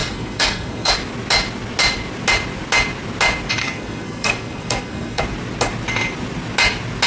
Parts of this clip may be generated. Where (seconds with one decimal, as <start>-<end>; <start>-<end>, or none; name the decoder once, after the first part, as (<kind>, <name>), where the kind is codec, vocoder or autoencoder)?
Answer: 0.0-0.9 (codec, SNAC); 3.6-5.2